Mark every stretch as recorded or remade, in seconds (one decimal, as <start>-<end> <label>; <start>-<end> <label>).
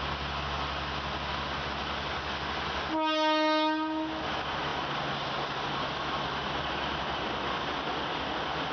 0.0-8.7 recorded